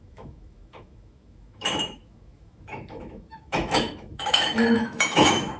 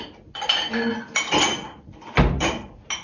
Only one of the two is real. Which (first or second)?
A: second